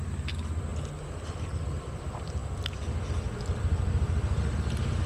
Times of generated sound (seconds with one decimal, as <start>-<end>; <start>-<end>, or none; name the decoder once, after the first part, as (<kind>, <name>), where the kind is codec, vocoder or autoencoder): 0.0-0.7 (vocoder, BigVGAN v2); 1.9-2.4